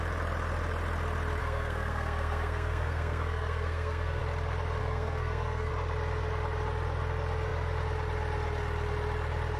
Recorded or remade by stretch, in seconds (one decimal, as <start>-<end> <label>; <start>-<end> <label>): 0.0-1.4 recorded; 1.4-4.2 remade; 4.2-4.8 recorded; 4.8-5.7 remade; 5.7-9.6 recorded